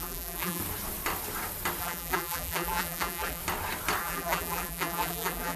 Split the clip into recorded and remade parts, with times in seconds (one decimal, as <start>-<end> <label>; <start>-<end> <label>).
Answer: 0.0-0.6 remade; 0.6-1.8 recorded; 1.8-3.4 remade; 3.4-4.0 recorded; 4.0-5.6 remade